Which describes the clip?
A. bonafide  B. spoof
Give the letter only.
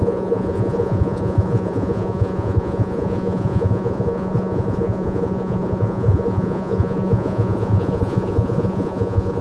B